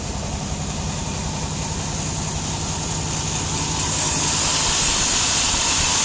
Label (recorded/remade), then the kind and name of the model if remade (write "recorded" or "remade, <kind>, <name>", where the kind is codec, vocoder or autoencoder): recorded